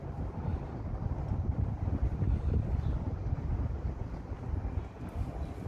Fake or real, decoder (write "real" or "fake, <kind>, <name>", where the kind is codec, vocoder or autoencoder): real